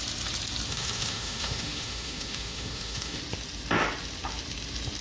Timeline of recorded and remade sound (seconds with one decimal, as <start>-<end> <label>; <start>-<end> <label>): 0.0-0.7 recorded; 0.7-3.2 remade; 3.2-5.0 recorded